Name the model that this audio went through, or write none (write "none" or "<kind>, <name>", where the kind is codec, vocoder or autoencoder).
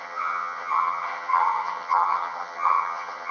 vocoder, HiFi-GAN